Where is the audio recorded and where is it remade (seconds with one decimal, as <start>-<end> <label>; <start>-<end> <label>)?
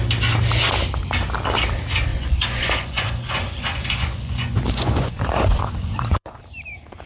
0.0-2.1 recorded; 2.1-6.4 remade; 6.4-7.1 recorded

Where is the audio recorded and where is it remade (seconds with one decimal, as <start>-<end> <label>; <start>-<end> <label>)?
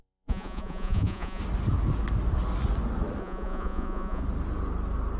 0.0-1.4 remade; 1.4-3.2 recorded; 3.2-4.2 remade; 4.2-5.2 recorded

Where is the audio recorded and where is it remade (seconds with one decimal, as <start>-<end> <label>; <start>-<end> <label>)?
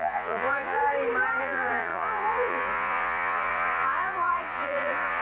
0.0-0.8 remade; 0.8-1.4 recorded; 1.4-5.2 remade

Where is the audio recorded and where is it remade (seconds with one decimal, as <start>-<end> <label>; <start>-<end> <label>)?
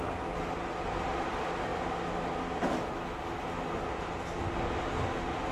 0.0-5.5 recorded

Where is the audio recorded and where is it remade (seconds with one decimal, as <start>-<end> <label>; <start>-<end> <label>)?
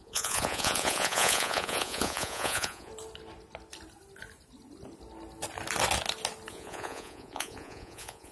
0.0-2.9 remade; 2.9-6.5 recorded; 6.5-8.3 remade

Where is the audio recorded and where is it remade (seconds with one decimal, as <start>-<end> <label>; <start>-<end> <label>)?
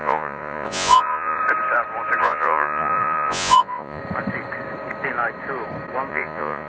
0.0-1.4 remade; 1.4-2.2 recorded; 2.2-4.0 remade; 4.0-6.1 recorded; 6.1-6.7 remade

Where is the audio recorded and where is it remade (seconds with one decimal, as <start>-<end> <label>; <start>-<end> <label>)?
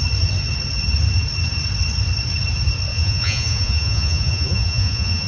0.0-2.9 recorded; 2.9-5.3 remade